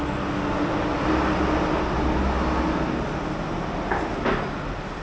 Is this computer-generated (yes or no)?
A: no